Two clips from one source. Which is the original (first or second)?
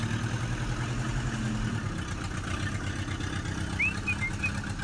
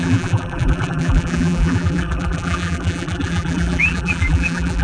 first